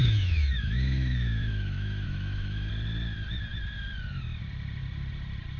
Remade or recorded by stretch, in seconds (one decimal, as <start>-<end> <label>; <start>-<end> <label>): 0.0-2.7 remade; 2.7-5.6 recorded